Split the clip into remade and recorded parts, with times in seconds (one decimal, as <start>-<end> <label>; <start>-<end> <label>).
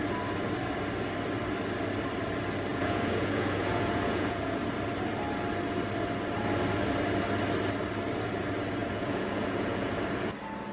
0.0-2.7 recorded; 2.7-4.6 remade; 4.6-8.8 recorded; 8.8-10.0 remade; 10.0-10.7 recorded